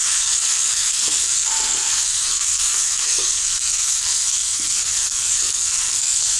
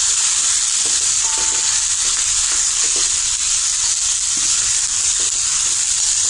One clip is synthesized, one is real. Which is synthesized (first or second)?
first